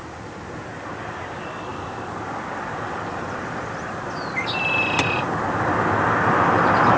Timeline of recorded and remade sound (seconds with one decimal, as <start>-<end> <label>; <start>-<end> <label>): 0.0-7.0 recorded

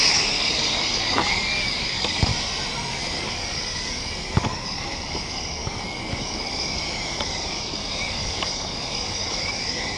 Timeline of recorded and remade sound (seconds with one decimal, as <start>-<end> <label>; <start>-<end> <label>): 0.0-2.3 remade; 2.3-2.9 recorded; 2.9-10.0 remade

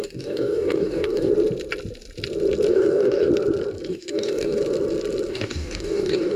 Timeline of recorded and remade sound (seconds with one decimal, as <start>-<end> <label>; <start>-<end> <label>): 0.0-1.3 remade; 1.3-2.7 recorded; 2.7-3.3 remade; 3.3-3.9 recorded; 3.9-4.6 remade; 4.6-5.3 recorded; 5.3-6.4 remade

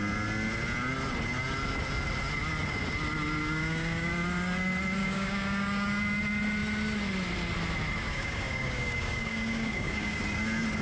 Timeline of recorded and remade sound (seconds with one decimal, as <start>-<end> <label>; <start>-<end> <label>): 0.0-3.4 recorded; 3.4-4.1 remade; 4.1-5.0 recorded; 5.0-6.0 remade; 6.0-8.0 recorded; 8.0-10.2 remade; 10.2-10.8 recorded

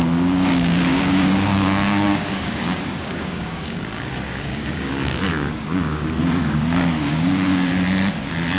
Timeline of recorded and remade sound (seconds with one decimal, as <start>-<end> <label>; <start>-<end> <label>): 0.0-7.7 remade; 7.7-8.6 recorded

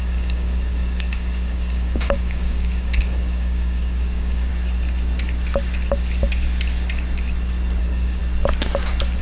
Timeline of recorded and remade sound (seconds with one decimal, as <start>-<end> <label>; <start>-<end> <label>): 0.0-4.5 remade; 4.5-7.8 recorded; 7.8-8.2 remade; 8.2-9.2 recorded